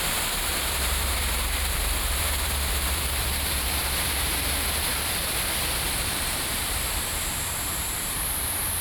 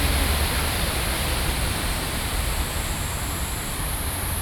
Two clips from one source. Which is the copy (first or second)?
first